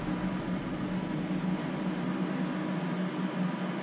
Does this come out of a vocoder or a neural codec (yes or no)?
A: no